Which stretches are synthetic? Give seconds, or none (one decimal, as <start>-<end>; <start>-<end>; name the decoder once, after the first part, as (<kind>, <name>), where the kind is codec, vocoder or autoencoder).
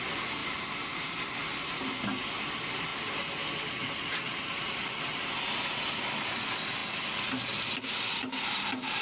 0.4-1.9 (vocoder, BigVGAN v2)